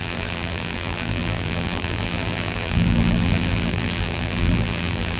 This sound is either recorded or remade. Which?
remade